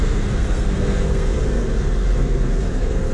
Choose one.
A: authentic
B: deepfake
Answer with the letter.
B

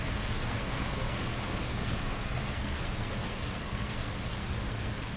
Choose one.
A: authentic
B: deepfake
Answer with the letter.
B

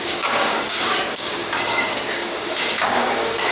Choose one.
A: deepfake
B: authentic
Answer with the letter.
A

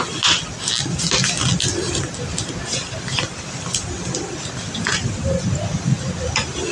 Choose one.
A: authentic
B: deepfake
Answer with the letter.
A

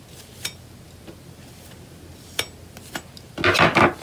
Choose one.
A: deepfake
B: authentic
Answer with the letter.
B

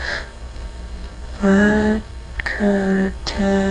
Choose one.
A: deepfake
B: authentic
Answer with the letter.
A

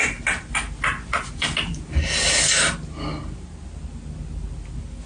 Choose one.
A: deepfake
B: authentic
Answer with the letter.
B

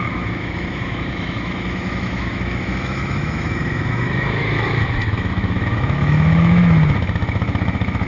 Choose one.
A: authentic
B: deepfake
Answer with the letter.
B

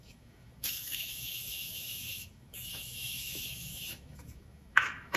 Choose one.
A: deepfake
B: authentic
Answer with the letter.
A